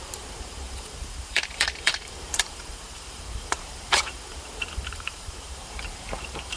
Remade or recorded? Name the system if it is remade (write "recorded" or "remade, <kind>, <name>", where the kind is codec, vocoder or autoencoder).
remade, vocoder, BigVGAN v2